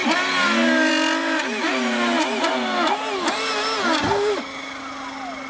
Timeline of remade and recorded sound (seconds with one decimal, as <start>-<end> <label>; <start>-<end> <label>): 0.0-5.5 recorded